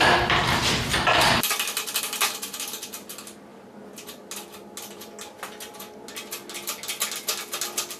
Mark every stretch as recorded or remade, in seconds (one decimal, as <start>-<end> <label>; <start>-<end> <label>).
0.0-8.0 recorded